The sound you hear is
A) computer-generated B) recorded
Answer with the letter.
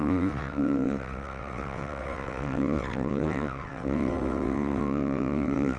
A